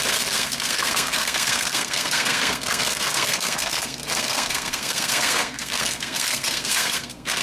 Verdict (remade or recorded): remade